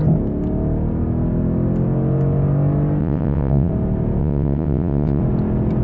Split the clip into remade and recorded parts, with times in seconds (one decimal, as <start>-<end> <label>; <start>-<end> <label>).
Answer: 0.0-3.0 recorded; 3.0-3.7 remade; 3.7-4.2 recorded; 4.2-5.2 remade; 5.2-5.8 recorded